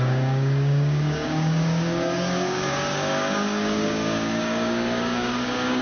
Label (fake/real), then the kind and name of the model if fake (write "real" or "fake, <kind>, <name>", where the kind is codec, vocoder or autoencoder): fake, codec, DAC